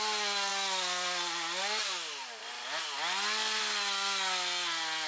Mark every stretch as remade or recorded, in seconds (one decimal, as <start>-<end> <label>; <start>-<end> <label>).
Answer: 0.0-5.1 recorded